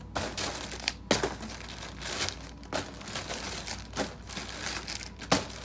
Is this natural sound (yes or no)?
yes